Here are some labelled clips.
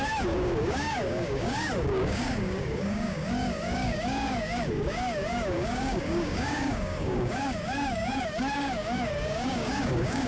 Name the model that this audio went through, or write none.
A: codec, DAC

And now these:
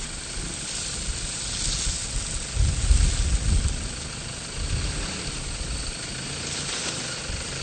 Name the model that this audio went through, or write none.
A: none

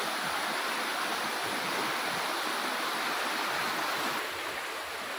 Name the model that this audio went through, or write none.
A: none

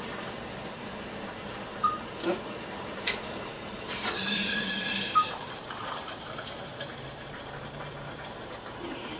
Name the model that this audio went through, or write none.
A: vocoder, BigVGAN v2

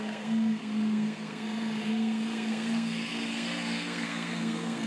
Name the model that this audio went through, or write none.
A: codec, SNAC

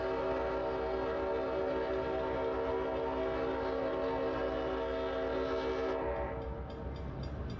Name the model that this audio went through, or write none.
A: none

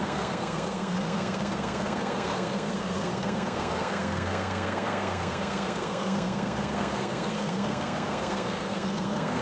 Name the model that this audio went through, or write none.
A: codec, SNAC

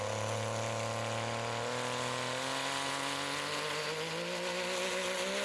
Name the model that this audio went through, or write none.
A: none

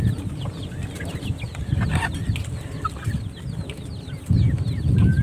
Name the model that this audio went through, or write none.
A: none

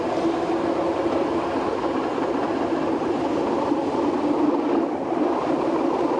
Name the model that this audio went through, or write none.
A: none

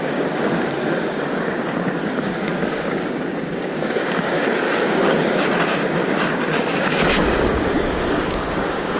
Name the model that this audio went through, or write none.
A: codec, DAC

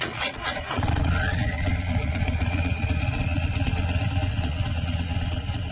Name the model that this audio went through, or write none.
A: vocoder, Vocos